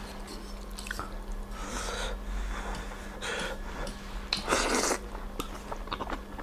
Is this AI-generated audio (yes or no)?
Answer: no